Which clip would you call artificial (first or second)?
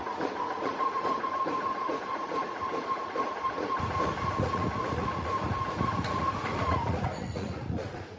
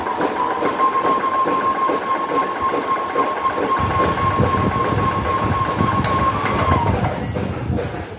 first